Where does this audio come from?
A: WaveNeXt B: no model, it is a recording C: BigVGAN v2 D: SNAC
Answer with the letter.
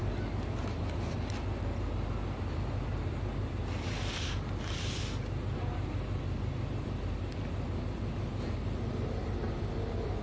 B